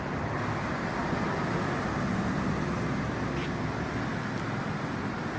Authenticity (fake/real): real